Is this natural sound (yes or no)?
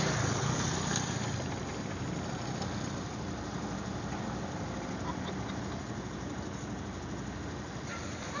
yes